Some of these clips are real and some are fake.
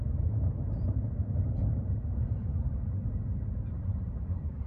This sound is fake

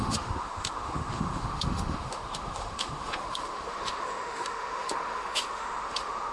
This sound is fake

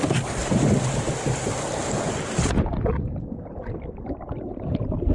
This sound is fake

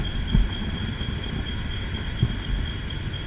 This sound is real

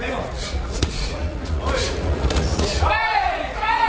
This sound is fake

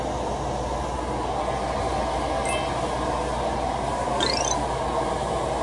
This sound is real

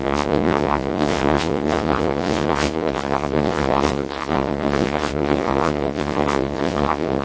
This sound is fake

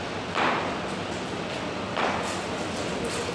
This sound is real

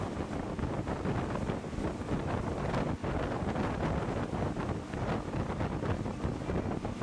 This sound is real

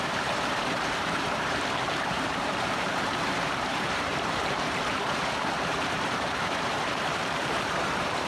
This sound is fake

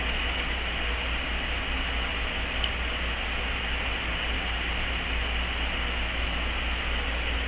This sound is real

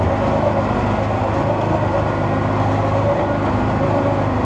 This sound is real